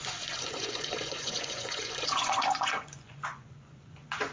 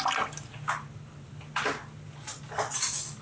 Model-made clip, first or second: first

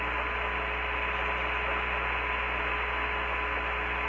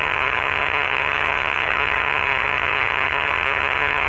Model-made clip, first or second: second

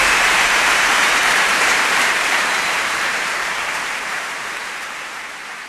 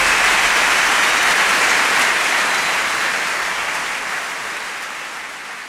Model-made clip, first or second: first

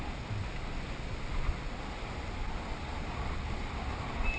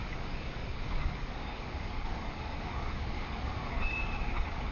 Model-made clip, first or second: second